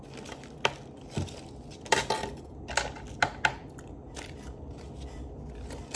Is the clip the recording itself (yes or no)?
yes